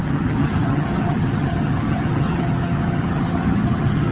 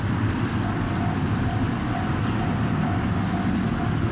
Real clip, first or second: second